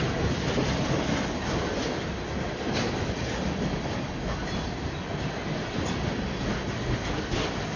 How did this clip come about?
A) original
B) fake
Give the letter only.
A